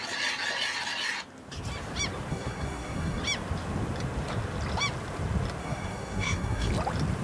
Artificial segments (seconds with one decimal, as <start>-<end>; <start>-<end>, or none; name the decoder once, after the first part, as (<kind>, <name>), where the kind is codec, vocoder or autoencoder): 2.3-3.2 (codec, SNAC); 5.6-6.7